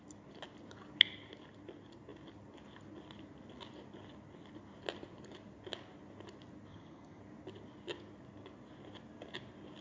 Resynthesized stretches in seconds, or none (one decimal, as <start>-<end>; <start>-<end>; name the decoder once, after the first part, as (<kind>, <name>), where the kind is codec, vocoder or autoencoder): 6.7-7.2 (vocoder, HiFi-GAN)